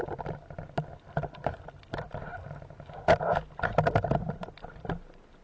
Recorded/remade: recorded